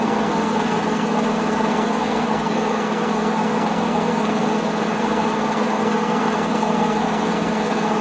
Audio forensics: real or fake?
fake